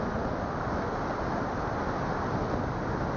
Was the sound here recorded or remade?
recorded